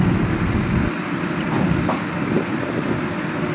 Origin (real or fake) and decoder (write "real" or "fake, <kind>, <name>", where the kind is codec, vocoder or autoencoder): real